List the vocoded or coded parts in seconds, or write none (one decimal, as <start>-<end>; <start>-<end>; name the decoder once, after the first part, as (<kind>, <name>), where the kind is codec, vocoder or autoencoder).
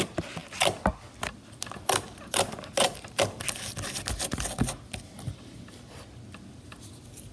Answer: none